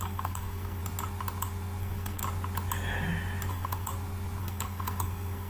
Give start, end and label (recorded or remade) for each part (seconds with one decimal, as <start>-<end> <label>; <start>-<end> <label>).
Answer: 0.0-0.8 remade; 0.8-1.8 recorded; 1.8-2.2 remade; 2.2-3.5 recorded; 3.5-3.9 remade; 3.9-4.4 recorded; 4.4-5.5 remade